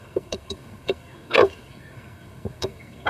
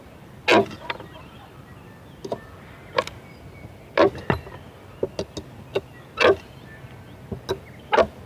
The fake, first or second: first